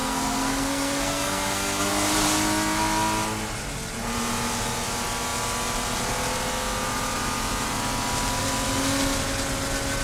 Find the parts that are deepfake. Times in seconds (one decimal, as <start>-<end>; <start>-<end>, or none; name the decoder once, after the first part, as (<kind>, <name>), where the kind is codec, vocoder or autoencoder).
0.0-1.9 (codec, SNAC)